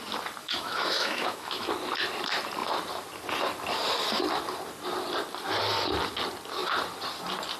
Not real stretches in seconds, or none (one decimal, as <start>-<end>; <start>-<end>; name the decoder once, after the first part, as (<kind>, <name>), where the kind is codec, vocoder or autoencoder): 0.4-1.7 (autoencoder, DAC-VAE)